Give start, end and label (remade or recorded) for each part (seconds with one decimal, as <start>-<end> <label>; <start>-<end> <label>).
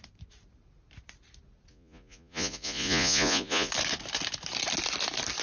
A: 0.0-1.7 recorded; 1.7-3.7 remade; 3.7-5.4 recorded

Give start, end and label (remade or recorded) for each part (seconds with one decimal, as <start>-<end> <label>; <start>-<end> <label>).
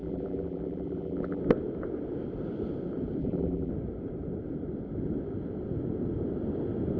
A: 0.0-1.4 remade; 1.4-3.2 recorded; 3.2-3.7 remade; 3.7-7.0 recorded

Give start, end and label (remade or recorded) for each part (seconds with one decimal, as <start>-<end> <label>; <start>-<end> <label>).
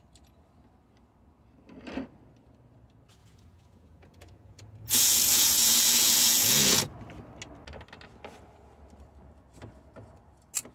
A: 0.0-3.2 recorded; 3.2-6.9 remade; 6.9-10.7 recorded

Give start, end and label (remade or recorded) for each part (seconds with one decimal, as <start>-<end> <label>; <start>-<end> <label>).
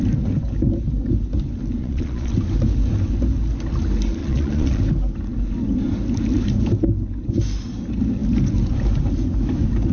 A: 0.0-1.8 recorded; 1.8-2.3 remade; 2.3-4.2 recorded; 4.2-4.8 remade; 4.8-9.9 recorded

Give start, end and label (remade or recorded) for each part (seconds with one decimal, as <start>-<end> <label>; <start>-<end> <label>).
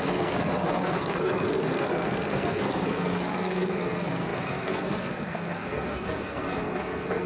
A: 0.0-7.3 remade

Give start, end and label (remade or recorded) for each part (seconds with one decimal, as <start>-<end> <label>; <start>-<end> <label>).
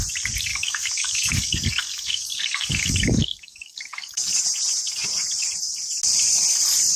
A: 0.0-0.5 recorded; 0.5-4.3 remade; 4.3-7.0 recorded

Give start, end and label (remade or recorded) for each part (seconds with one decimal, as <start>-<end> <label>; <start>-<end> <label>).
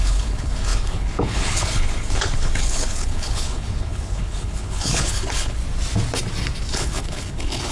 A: 0.0-5.6 remade; 5.6-6.7 recorded; 6.7-7.7 remade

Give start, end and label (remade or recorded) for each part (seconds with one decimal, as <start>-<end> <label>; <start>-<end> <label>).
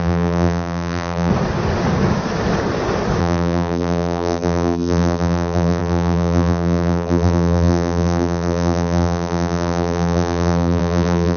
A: 0.0-1.3 remade; 1.3-3.2 recorded; 3.2-11.4 remade